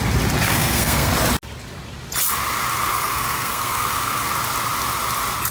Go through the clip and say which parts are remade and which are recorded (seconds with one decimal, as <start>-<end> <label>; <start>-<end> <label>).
0.0-0.5 recorded; 0.5-1.1 remade; 1.1-2.9 recorded; 2.9-4.3 remade; 4.3-5.5 recorded